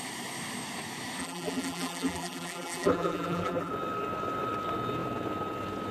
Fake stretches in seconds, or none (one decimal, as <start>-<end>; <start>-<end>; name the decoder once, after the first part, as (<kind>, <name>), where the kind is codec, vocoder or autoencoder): 1.2-3.7 (vocoder, BigVGAN v2)